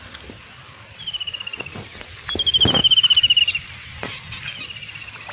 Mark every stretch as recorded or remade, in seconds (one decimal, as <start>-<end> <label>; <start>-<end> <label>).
0.0-5.3 recorded